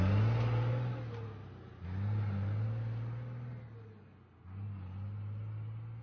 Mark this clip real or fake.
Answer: real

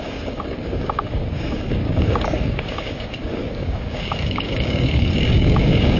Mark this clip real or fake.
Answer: fake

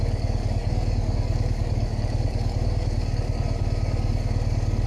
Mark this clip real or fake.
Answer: fake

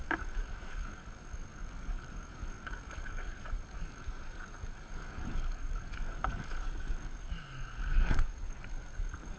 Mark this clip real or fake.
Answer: fake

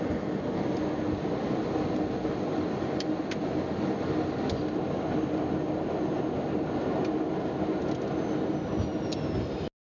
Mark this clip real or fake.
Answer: real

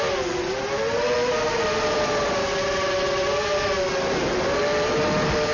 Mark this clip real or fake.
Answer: real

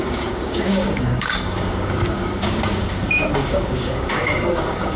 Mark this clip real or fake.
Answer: fake